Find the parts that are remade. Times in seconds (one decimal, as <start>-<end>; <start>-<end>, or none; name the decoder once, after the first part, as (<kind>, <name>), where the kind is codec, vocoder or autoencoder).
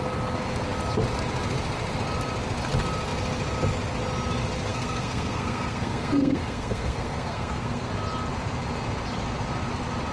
4.7-7.9 (codec, SNAC)